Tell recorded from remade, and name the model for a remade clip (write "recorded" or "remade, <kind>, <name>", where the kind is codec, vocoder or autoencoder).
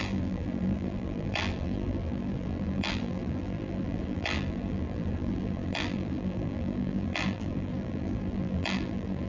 remade, vocoder, BigVGAN v2